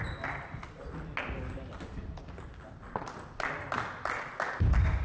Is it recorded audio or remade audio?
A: recorded